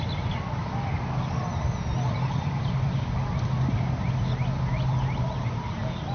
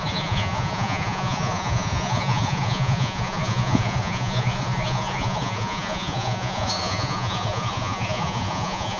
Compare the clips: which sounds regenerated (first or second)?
second